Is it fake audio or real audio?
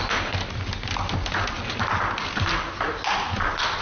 real